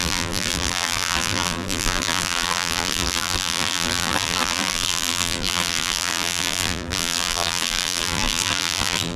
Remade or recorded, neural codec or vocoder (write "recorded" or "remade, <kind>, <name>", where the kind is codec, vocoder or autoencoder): remade, vocoder, BigVGAN v2